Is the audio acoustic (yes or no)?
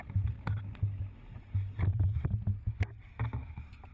yes